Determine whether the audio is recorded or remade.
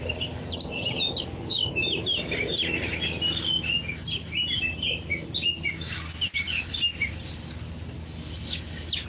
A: recorded